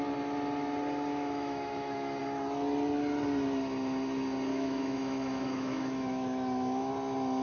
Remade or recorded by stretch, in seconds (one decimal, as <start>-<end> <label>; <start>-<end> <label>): 0.0-1.1 recorded; 1.1-2.2 remade; 2.2-4.5 recorded; 4.5-6.9 remade; 6.9-7.4 recorded